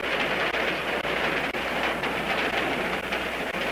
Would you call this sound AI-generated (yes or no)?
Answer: yes